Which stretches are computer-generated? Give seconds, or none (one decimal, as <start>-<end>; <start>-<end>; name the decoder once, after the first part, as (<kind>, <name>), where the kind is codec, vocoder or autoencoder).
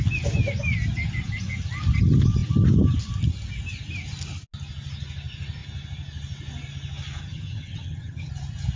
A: 7.2-8.3 (vocoder, HiFi-GAN)